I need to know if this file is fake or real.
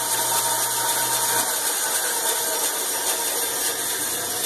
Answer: real